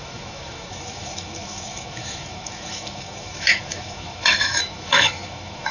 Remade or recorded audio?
remade